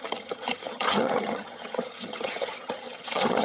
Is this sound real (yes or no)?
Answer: no